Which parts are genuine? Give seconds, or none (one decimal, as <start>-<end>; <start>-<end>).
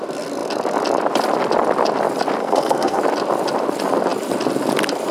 0.0-2.4; 3.0-5.1